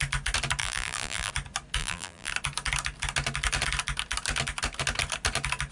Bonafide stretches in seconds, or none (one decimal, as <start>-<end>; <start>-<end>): 0.0-0.6; 1.3-1.8; 2.3-5.7